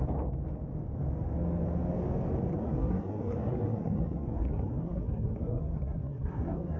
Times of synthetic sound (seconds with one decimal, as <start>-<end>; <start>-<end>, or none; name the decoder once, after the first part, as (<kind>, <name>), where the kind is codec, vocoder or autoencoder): 2.5-6.8 (codec, SNAC)